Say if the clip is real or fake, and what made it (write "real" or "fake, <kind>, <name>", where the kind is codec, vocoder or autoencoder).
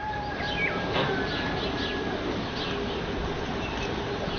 real